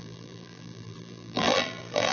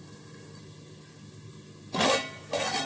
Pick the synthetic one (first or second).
first